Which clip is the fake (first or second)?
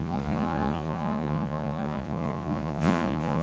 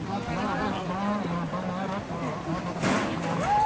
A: first